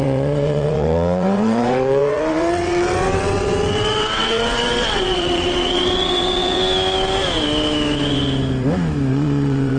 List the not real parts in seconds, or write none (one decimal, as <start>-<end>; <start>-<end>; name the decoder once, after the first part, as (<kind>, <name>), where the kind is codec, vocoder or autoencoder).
0.0-6.6 (vocoder, WaveNeXt); 9.1-9.8

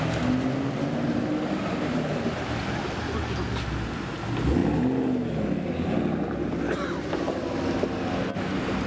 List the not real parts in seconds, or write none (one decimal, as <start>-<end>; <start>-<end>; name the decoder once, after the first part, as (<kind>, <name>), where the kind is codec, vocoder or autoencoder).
none

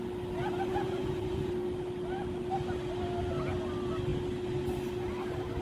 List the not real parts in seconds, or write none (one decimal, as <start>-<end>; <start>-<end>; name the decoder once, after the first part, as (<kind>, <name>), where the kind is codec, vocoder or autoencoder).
0.7-1.5 (vocoder, Vocos)

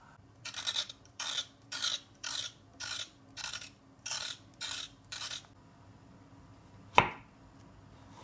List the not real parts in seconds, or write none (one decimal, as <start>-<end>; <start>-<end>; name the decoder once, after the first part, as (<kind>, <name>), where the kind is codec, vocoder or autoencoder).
none

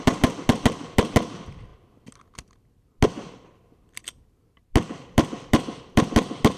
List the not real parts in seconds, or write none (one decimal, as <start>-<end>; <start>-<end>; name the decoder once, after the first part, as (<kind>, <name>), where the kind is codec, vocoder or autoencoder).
none

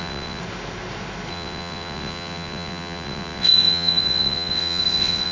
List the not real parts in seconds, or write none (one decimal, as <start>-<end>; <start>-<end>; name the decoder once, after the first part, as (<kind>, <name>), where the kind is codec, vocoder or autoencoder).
0.0-0.4 (vocoder, WaveNeXt); 1.3-5.3

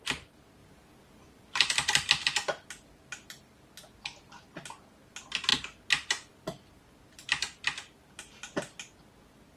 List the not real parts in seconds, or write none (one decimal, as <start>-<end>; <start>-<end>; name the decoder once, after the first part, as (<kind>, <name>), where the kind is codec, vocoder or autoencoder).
0.6-2.1 (vocoder, BigVGAN v2)